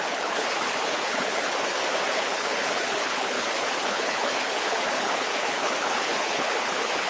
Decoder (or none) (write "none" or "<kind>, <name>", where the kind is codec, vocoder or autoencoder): codec, HILCodec